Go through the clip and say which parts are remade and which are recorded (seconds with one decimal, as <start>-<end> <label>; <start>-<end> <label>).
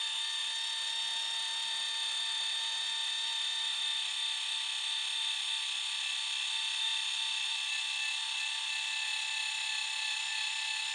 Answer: 0.0-10.9 recorded